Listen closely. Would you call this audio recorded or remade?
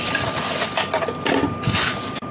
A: recorded